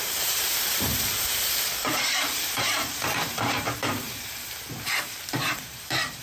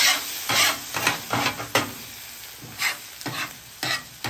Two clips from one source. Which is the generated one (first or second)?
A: first